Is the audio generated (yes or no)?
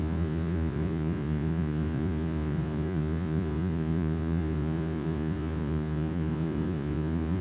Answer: yes